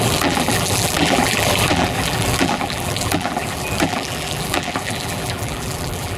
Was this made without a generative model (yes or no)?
no